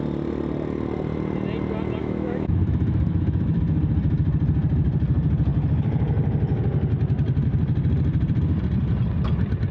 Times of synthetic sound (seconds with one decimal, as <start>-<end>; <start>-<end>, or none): 2.0-3.6